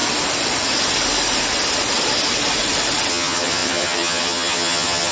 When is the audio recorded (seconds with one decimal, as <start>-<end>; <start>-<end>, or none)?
0.0-3.1